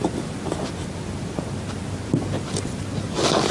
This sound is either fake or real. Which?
real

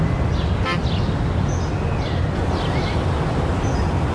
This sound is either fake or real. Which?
real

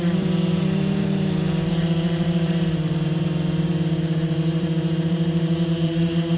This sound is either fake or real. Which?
fake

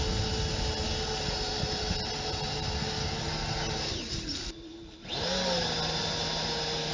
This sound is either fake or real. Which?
real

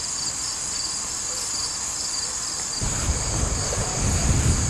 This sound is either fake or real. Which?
real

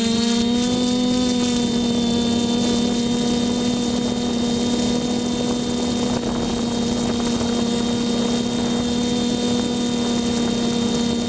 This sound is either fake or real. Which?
real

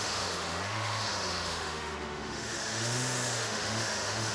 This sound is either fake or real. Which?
fake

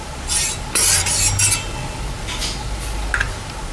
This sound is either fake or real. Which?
real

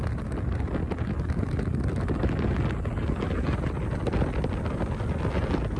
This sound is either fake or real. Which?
real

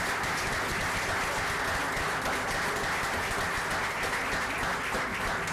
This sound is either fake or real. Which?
real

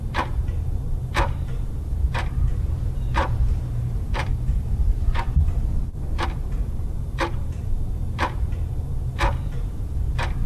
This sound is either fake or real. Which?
fake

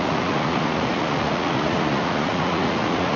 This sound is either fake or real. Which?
fake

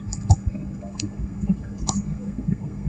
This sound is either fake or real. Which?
fake